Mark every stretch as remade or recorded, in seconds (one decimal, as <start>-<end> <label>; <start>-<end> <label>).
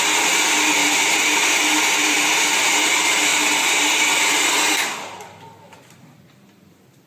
0.0-0.8 recorded; 0.8-1.7 remade; 1.7-3.3 recorded; 3.3-4.5 remade; 4.5-7.1 recorded